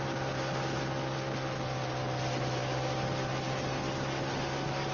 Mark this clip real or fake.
real